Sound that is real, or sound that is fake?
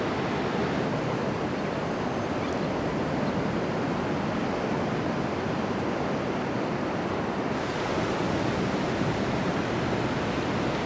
real